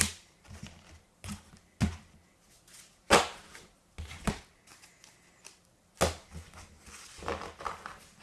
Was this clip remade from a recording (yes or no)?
no